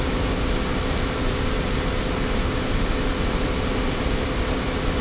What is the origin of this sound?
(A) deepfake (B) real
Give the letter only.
B